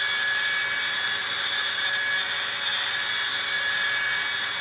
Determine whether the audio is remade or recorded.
recorded